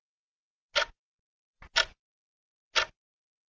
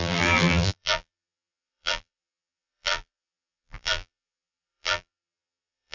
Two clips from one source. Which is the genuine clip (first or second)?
first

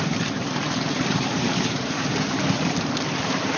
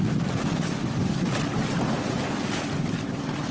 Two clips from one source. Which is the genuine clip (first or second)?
second